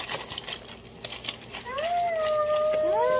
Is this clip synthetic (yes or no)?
no